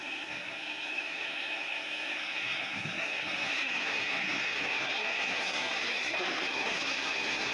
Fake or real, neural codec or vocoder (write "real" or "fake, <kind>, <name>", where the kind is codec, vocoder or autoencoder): fake, codec, SNAC